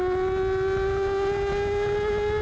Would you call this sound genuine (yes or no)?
yes